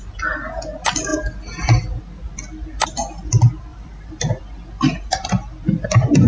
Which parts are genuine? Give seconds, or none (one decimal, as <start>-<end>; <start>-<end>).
0.0-3.7; 4.4-6.3